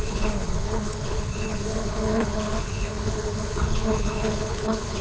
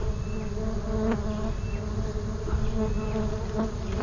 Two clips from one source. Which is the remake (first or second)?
first